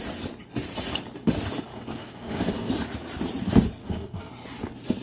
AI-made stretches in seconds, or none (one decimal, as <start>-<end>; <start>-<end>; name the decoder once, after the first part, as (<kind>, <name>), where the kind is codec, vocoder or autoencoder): 1.7-2.7 (codec, SNAC); 3.8-4.3